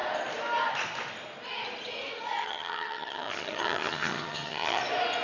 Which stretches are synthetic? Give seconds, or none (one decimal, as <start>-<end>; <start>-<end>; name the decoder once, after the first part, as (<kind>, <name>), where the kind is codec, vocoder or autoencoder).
2.4-4.8 (vocoder, HiFi-GAN)